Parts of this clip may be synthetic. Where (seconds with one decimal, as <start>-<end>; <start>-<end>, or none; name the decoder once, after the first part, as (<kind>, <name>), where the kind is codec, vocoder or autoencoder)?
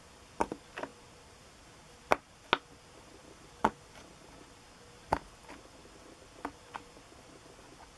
none